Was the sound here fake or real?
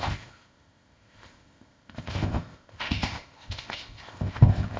fake